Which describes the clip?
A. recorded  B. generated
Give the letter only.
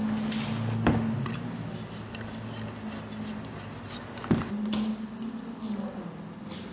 A